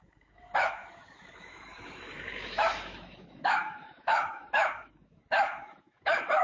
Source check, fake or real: fake